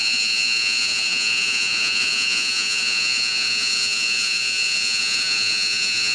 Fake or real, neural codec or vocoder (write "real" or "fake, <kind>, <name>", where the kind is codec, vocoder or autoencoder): fake, vocoder, Vocos